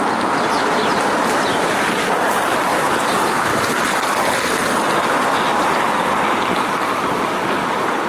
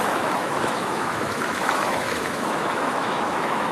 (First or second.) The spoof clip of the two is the second